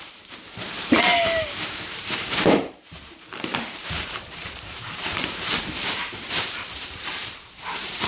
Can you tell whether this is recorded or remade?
remade